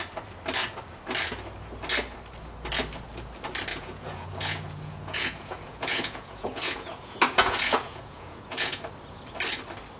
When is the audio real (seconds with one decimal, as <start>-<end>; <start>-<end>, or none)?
0.0-3.7; 8.8-10.0